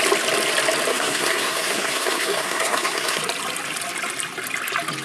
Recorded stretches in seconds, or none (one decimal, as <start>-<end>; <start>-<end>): 0.0-0.9; 3.2-5.0